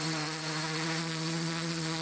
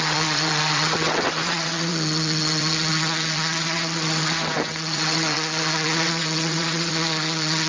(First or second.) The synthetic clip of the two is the second